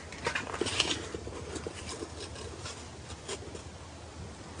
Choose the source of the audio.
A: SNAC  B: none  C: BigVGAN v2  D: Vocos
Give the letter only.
B